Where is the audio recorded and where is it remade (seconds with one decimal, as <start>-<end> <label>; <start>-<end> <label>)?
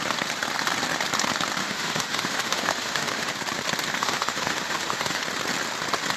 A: 0.0-1.6 recorded; 1.6-3.3 remade; 3.3-4.0 recorded; 4.0-5.2 remade; 5.2-6.2 recorded